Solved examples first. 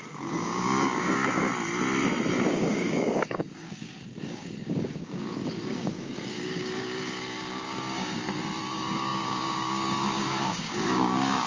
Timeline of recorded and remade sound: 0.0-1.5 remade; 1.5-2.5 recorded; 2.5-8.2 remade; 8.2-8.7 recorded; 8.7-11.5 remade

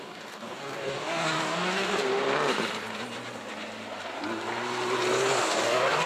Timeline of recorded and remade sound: 0.0-2.0 remade; 2.0-5.4 recorded; 5.4-6.1 remade